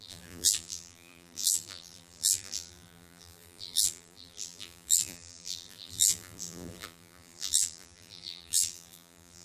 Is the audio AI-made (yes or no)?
yes